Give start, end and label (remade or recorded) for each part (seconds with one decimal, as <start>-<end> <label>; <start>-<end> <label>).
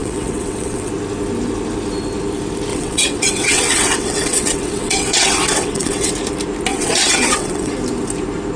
0.0-0.9 remade; 0.9-2.7 recorded; 2.7-6.1 remade; 6.1-6.7 recorded; 6.7-7.7 remade; 7.7-8.6 recorded